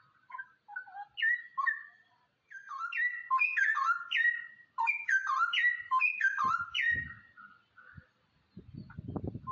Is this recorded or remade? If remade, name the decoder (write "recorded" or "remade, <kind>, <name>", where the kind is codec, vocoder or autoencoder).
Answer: recorded